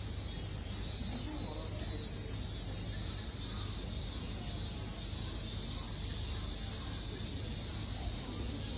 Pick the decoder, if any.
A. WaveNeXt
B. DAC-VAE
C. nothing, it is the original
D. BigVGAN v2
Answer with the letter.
C